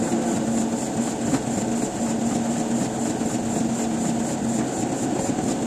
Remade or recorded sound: recorded